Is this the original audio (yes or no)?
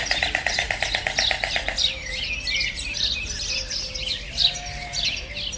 yes